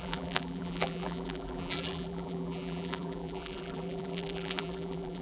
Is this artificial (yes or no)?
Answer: yes